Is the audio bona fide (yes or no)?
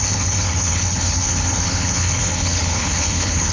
no